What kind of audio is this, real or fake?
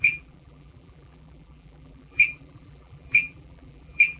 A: fake